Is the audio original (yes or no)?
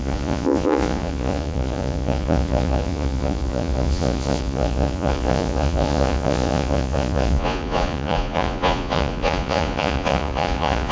no